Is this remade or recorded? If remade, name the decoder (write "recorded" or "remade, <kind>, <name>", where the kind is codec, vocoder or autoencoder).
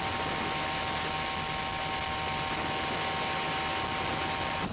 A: recorded